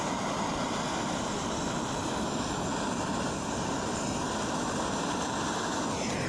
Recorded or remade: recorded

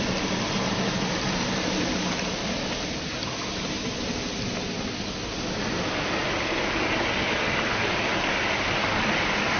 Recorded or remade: recorded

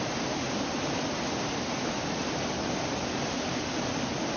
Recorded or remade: recorded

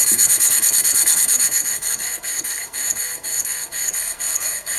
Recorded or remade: remade